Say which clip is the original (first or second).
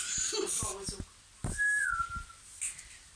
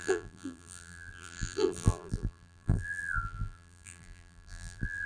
first